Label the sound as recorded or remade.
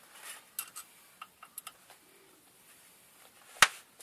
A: recorded